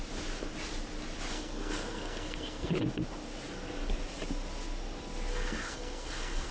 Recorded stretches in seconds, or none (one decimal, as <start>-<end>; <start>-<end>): 0.0-1.3; 2.7-5.3